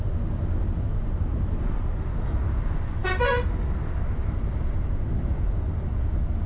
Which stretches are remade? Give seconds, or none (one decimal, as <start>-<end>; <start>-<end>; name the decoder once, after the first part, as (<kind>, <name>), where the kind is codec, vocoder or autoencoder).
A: none